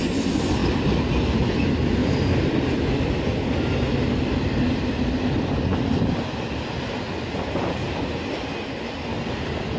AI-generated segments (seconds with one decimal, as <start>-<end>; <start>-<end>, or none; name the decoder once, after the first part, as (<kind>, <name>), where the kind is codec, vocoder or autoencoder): 2.0-6.1 (vocoder, BigVGAN v2); 9.1-9.8

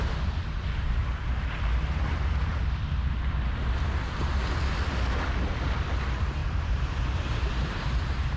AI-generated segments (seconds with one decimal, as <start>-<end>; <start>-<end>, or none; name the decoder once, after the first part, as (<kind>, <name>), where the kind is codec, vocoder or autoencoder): 6.4-8.4 (vocoder, BigVGAN v2)

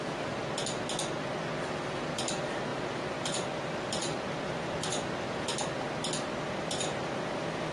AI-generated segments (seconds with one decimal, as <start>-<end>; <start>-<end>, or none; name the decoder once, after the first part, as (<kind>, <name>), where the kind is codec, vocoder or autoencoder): 0.0-0.4 (vocoder, BigVGAN v2); 1.4-5.5; 6.3-7.7

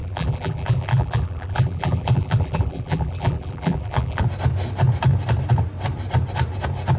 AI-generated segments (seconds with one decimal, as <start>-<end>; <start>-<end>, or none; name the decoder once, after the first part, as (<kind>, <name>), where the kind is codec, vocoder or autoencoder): 0.0-4.2 (vocoder, BigVGAN v2)

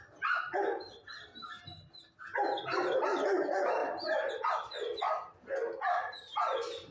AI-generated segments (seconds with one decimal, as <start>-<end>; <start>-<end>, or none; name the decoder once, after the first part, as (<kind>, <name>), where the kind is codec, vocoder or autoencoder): 3.8-4.3 (vocoder, BigVGAN v2)

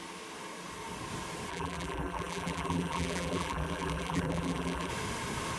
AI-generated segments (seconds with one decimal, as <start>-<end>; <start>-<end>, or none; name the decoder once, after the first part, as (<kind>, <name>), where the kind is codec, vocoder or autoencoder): 1.5-4.9 (vocoder, BigVGAN v2)

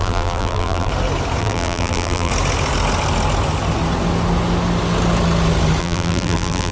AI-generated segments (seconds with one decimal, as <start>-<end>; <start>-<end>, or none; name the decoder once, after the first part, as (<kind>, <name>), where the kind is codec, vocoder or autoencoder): 0.0-0.9 (vocoder, BigVGAN v2); 1.4-2.3; 5.8-6.7

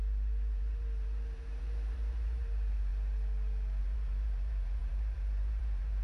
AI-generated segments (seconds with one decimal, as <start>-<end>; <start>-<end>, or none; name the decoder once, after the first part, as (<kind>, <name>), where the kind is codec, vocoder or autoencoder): 0.0-2.9 (vocoder, BigVGAN v2); 3.8-6.0